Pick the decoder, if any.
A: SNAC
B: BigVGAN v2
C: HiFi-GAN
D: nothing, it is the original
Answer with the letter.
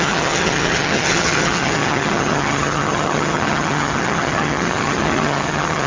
C